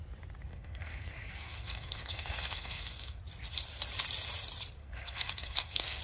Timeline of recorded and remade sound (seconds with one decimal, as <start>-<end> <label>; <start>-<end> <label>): 0.0-0.5 recorded; 0.5-3.2 remade; 3.2-4.8 recorded; 4.8-6.0 remade